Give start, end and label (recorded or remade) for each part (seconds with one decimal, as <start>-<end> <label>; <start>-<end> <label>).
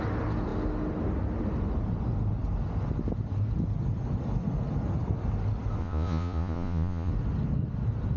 0.0-5.8 recorded; 5.8-7.1 remade; 7.1-8.2 recorded